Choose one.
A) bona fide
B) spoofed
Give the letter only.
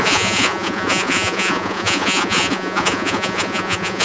B